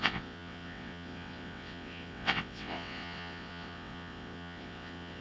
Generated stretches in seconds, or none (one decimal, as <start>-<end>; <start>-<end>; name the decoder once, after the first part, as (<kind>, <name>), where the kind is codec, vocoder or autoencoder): 0.0-5.2 (vocoder, WaveNeXt)